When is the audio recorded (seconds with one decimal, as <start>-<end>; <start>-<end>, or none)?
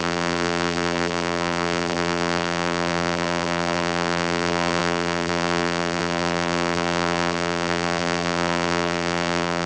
none